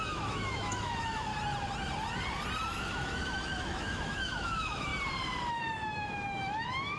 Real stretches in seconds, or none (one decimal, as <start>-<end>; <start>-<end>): 1.3-2.7; 4.9-5.5